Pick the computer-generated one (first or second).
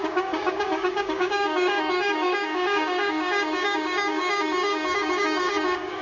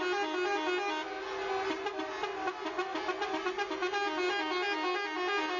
first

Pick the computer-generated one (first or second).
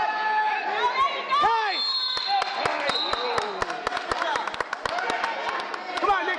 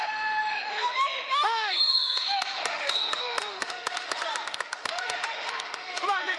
second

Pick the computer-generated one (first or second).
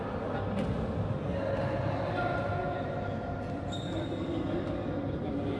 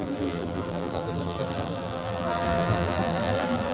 second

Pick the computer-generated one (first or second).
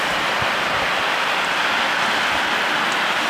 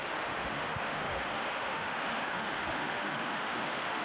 second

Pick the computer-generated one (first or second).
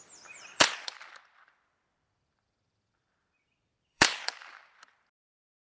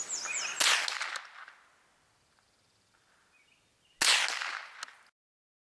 first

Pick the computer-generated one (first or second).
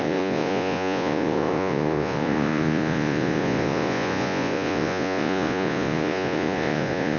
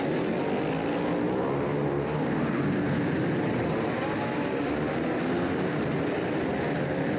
first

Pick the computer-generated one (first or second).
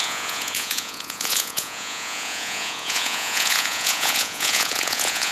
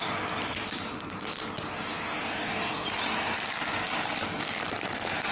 first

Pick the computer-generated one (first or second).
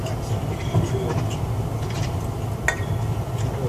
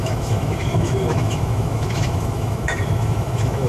second